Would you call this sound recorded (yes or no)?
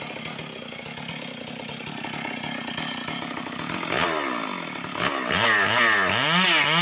yes